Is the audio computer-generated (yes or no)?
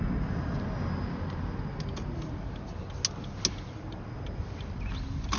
no